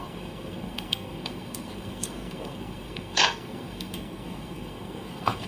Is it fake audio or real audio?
fake